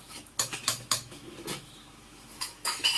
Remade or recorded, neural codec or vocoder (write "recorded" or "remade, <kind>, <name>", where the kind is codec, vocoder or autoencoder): remade, autoencoder, DAC-VAE